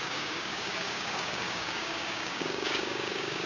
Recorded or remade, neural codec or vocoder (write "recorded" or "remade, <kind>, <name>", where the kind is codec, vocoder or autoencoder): remade, codec, DAC